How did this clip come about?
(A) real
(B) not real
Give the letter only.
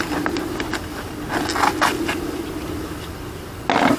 A